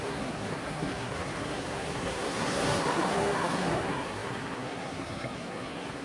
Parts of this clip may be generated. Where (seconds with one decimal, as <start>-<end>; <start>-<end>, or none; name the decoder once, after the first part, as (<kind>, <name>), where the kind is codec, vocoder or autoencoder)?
0.0-6.0 (codec, SNAC)